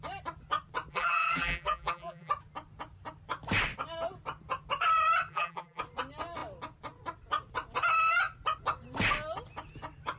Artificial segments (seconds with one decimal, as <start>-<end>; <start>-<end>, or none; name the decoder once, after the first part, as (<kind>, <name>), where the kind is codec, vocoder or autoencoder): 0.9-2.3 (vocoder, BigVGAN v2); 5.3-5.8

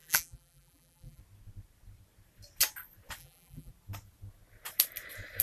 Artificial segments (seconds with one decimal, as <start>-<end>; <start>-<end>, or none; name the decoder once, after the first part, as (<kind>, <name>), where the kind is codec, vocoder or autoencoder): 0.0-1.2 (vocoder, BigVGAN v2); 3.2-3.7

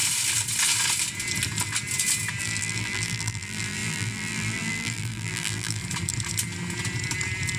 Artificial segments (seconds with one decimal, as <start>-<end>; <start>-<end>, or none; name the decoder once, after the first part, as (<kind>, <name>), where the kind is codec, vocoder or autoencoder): 2.4-5.8 (vocoder, BigVGAN v2)